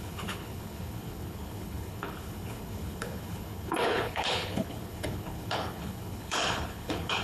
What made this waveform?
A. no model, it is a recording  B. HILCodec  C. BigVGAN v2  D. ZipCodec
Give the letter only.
B